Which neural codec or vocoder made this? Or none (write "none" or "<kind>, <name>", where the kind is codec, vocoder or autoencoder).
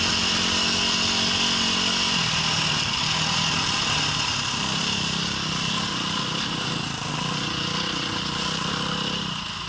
none